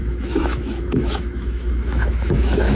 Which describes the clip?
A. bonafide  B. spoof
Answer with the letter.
B